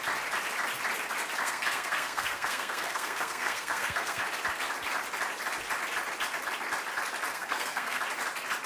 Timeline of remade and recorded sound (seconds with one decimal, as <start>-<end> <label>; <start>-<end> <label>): 0.0-1.4 recorded; 1.4-4.2 remade; 4.2-7.3 recorded; 7.3-8.0 remade; 8.0-8.7 recorded